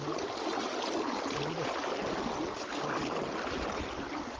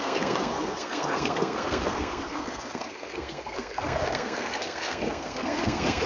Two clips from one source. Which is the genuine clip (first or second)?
first